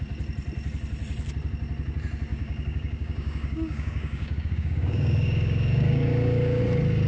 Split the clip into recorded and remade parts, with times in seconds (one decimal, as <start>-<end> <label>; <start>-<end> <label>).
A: 0.0-2.3 recorded; 2.3-6.6 remade; 6.6-7.1 recorded